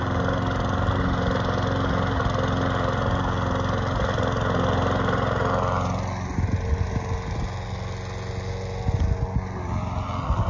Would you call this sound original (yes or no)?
yes